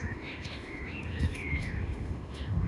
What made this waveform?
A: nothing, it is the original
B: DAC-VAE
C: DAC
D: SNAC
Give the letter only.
B